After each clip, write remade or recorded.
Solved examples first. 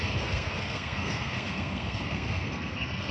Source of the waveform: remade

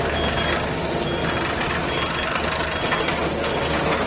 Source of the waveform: recorded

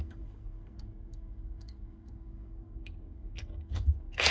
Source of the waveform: remade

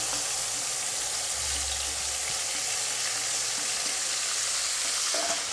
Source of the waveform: recorded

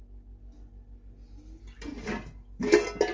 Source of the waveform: recorded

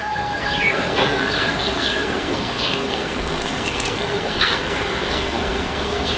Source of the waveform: remade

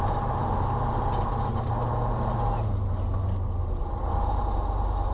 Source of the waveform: recorded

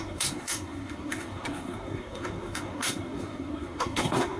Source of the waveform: remade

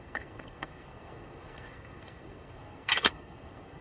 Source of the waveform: remade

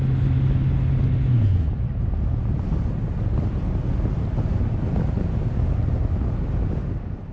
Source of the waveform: recorded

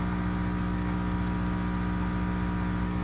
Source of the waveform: recorded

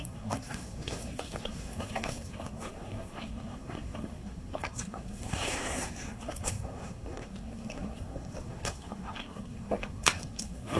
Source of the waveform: remade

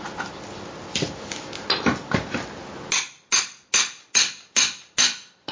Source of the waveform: recorded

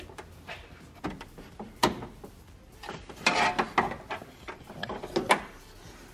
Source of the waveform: recorded